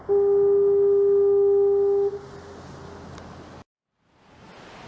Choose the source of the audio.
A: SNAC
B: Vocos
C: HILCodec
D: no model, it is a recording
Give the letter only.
D